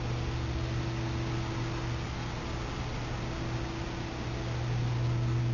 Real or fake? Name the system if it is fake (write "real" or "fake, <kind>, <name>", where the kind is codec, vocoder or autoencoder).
real